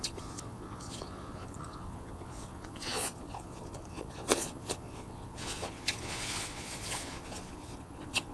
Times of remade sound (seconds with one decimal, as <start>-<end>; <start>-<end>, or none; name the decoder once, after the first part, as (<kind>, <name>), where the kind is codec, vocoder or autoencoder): 0.0-8.3 (vocoder, Vocos)

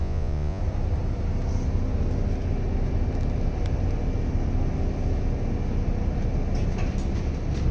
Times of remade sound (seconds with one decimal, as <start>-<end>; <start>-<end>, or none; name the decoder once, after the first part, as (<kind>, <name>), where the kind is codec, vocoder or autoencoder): 0.0-0.6 (vocoder, Vocos)

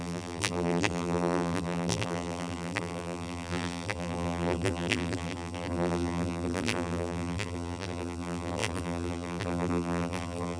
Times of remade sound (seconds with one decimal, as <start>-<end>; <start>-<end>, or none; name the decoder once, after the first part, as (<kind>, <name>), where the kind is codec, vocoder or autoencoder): 0.0-10.6 (vocoder, BigVGAN v2)

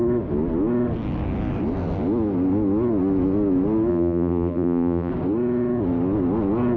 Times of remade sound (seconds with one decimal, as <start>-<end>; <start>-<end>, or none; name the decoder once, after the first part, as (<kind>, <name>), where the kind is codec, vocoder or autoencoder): 3.9-5.1 (vocoder, BigVGAN v2)

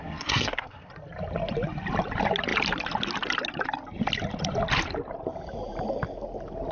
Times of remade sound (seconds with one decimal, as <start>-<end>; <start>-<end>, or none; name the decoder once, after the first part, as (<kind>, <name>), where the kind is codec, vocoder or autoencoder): 0.0-0.9 (codec, SNAC)